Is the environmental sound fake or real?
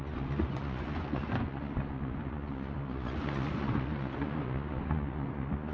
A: fake